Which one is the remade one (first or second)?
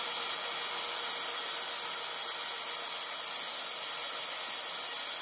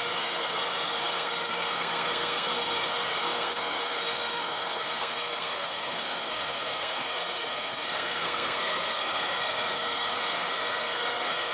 second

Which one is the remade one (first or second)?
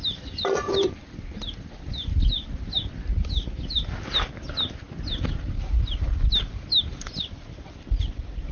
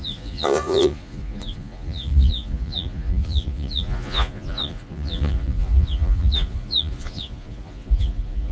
second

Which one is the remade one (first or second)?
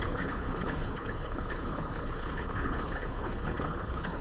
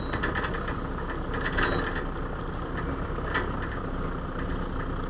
first